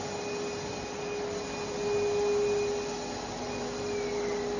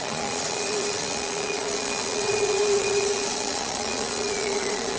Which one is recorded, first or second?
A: first